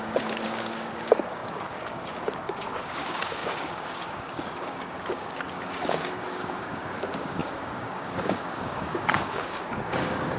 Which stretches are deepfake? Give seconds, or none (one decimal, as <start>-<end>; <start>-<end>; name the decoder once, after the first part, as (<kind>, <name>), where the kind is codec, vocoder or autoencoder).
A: 0.0-10.4 (codec, DAC)